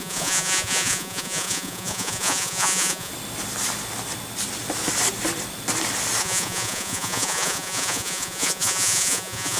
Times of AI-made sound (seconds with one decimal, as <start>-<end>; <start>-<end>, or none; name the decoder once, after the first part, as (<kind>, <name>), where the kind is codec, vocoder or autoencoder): 0.0-3.1 (vocoder, Vocos); 6.2-9.6